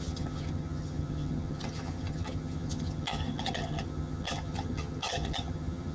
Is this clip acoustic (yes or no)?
no